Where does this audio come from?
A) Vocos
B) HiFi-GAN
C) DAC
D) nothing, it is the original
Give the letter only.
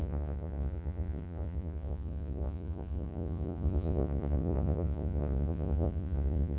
A